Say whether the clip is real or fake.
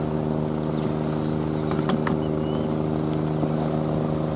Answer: real